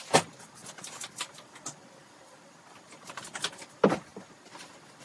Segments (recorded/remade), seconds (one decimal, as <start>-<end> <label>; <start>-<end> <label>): 0.0-5.0 recorded